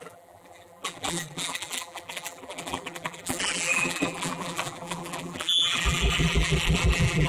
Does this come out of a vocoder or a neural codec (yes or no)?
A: yes